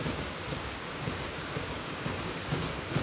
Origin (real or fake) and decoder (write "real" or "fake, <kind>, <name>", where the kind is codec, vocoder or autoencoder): fake, codec, DAC